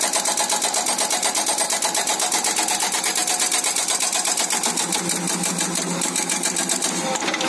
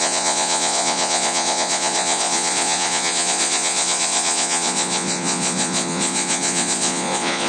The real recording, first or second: first